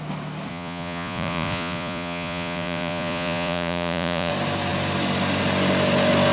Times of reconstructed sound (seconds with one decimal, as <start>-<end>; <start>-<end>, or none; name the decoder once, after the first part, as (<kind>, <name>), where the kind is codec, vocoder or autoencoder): 0.5-4.3 (vocoder, Vocos)